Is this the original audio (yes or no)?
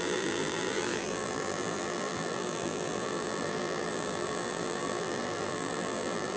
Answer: no